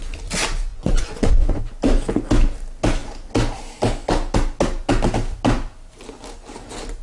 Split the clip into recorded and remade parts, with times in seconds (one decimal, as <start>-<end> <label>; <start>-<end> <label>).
0.0-0.7 recorded; 0.7-1.6 remade; 1.6-7.0 recorded